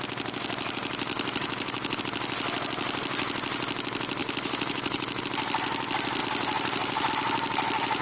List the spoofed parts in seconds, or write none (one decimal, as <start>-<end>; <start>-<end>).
1.1-2.0; 4.2-5.2